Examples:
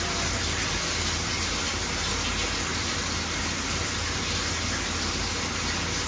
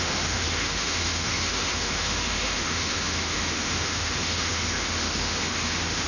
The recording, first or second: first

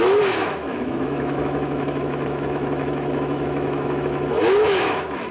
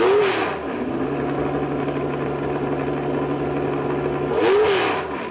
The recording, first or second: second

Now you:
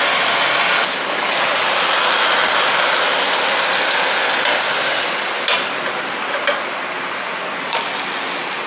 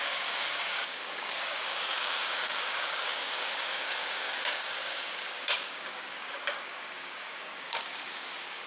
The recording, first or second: first